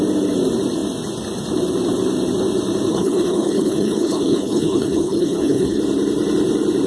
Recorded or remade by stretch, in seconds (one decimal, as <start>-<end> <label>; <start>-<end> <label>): 0.0-2.9 recorded; 2.9-5.8 remade; 5.8-6.9 recorded